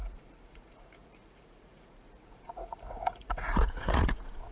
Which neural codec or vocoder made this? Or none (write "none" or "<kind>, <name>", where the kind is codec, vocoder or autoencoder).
vocoder, Vocos